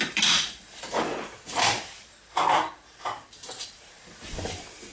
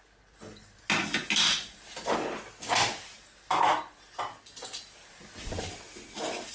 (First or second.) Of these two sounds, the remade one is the first